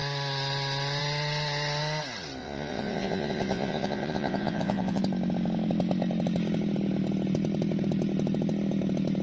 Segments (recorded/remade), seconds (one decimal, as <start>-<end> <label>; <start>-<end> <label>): 0.0-2.4 recorded; 2.4-5.0 remade; 5.0-9.2 recorded